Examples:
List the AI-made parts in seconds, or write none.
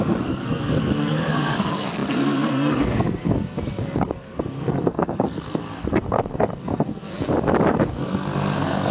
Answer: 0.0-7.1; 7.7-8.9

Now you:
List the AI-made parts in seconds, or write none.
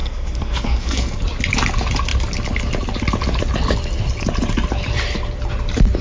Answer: 0.0-1.2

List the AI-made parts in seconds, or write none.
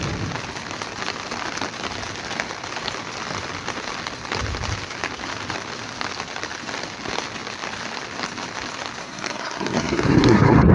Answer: 9.0-10.7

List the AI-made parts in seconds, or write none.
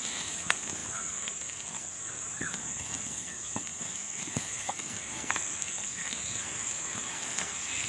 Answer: 0.0-7.9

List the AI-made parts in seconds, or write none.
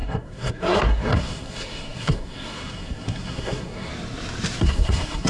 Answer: 0.0-3.9; 4.6-5.3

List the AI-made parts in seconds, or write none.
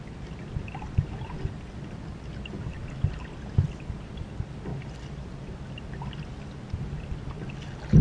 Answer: none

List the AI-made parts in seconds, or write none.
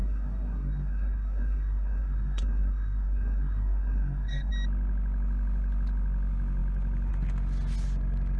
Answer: 0.0-4.5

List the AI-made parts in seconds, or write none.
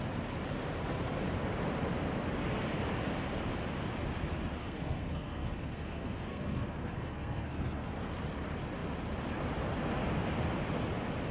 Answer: 4.6-8.1